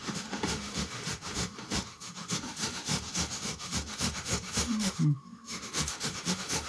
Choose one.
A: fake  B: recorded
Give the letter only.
A